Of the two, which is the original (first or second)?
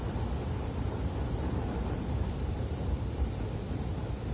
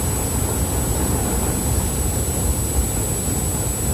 second